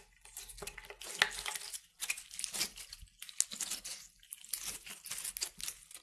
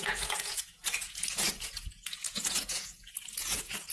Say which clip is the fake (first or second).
second